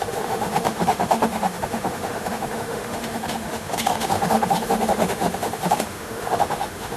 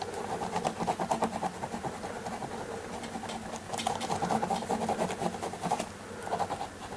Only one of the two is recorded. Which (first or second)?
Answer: second